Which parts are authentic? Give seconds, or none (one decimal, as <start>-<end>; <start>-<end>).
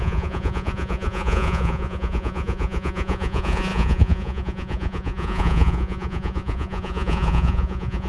none